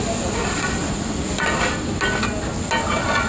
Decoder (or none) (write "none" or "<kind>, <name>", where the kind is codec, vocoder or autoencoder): none